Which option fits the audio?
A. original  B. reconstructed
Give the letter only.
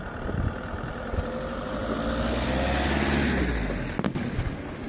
A